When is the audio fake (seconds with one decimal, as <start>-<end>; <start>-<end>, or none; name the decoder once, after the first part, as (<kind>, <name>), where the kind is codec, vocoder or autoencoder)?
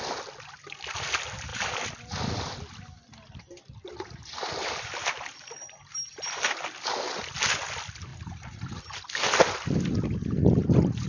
1.5-3.4 (vocoder, BigVGAN v2); 8.1-8.8